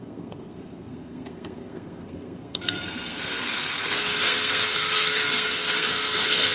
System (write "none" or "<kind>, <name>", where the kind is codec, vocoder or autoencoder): codec, SNAC